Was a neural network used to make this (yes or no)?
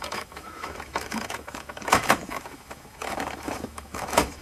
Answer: yes